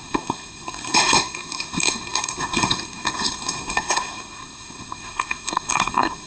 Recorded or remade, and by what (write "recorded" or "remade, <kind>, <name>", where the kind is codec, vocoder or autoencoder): remade, codec, SNAC